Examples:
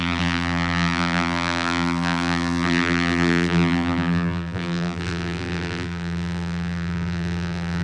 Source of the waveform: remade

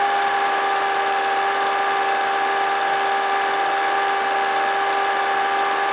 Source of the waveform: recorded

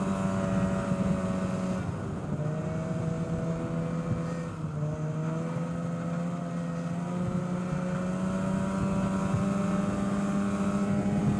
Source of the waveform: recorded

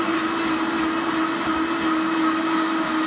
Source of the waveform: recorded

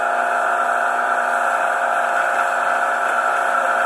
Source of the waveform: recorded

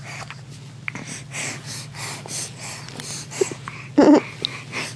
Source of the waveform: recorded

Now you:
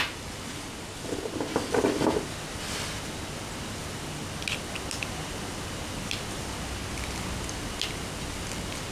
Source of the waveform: recorded